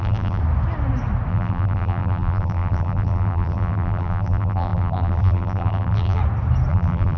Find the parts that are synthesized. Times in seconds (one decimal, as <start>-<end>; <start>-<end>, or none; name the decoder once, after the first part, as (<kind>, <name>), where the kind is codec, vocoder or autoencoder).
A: 0.0-0.4 (vocoder, BigVGAN v2); 1.3-6.2; 6.7-7.2